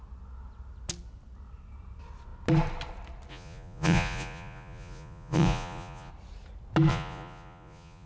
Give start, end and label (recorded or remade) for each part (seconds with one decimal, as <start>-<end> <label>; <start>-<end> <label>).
0.0-3.3 recorded; 3.3-6.1 remade; 6.1-6.9 recorded; 6.9-8.1 remade